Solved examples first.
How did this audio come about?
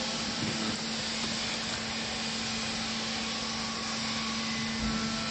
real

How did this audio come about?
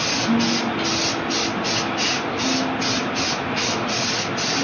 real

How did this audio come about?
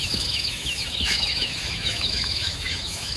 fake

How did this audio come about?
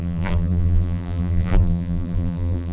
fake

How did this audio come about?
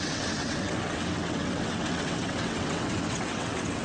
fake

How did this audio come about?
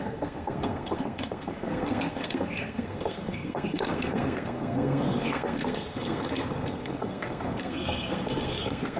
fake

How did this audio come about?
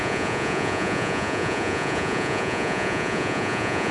fake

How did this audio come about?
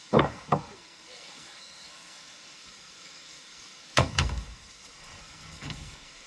fake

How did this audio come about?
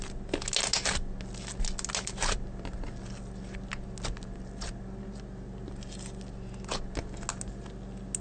real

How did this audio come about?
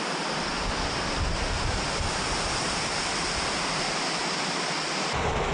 real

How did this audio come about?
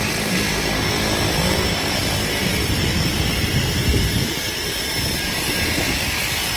real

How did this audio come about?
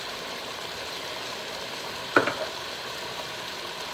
fake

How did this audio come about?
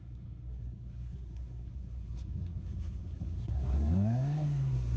fake